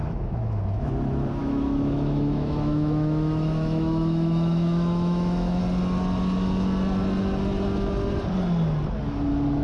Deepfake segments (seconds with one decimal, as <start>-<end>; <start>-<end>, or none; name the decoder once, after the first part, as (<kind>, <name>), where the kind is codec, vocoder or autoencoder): 0.0-0.9 (autoencoder, DAC-VAE); 1.4-5.6

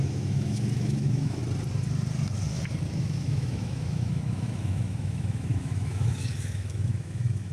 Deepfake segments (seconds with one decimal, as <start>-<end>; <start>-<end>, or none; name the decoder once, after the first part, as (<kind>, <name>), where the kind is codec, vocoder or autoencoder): 0.0-1.4 (autoencoder, DAC-VAE); 2.9-7.5

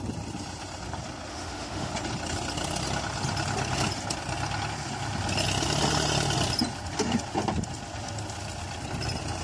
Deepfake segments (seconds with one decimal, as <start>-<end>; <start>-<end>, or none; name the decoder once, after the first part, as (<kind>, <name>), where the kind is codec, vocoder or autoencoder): 1.3-1.9 (autoencoder, DAC-VAE)

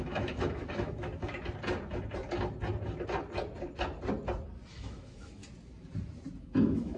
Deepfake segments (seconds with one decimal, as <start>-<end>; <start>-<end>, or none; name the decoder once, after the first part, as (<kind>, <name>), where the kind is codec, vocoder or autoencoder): 0.0-1.1 (autoencoder, DAC-VAE); 4.7-5.4; 6.4-7.0

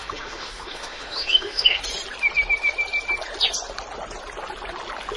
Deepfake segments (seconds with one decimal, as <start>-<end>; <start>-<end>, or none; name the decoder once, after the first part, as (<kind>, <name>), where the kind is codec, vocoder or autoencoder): 0.0-1.8 (autoencoder, DAC-VAE)

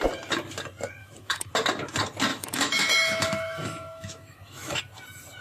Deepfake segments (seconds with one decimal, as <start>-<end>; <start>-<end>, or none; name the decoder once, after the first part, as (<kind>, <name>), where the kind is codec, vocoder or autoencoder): 1.0-1.5 (autoencoder, DAC-VAE); 2.3-4.8

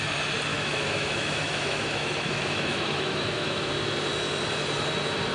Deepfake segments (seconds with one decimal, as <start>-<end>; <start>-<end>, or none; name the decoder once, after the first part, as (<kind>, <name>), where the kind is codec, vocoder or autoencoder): 0.5-3.7 (autoencoder, DAC-VAE)